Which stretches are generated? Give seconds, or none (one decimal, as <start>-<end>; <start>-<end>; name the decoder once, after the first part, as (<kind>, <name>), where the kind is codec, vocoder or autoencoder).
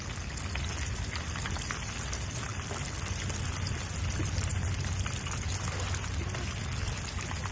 none